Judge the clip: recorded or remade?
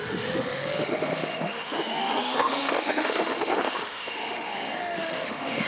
remade